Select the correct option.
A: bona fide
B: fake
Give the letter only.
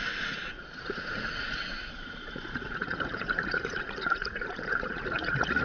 B